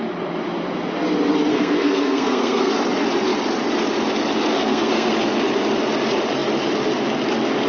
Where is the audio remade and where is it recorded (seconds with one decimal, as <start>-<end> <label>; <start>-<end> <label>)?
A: 0.0-1.5 recorded; 1.5-2.7 remade; 2.7-4.5 recorded; 4.5-5.1 remade; 5.1-7.7 recorded